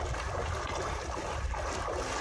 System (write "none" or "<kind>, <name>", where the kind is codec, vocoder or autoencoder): none